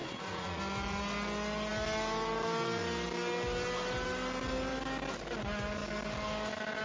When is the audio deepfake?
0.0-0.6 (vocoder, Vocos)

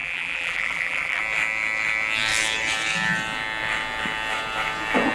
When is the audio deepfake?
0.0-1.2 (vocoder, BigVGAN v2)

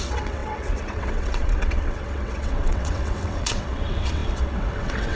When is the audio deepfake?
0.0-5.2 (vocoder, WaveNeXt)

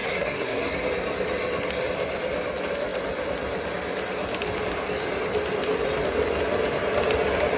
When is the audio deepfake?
0.0-0.7 (codec, SNAC)